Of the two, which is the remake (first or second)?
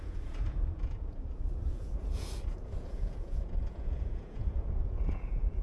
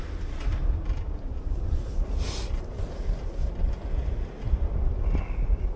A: first